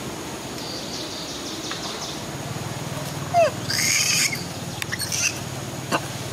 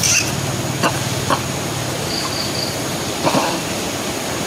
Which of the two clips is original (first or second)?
first